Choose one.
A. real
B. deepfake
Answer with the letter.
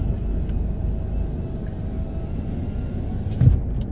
A